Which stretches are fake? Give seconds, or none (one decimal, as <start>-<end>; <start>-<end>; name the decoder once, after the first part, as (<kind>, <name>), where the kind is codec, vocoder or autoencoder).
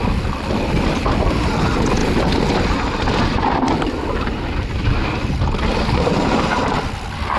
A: none